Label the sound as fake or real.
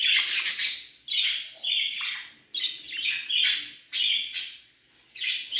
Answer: real